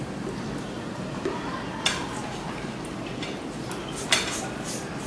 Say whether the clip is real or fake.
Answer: real